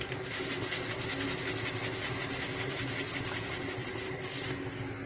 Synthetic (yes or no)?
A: no